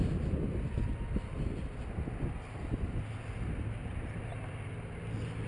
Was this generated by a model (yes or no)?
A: no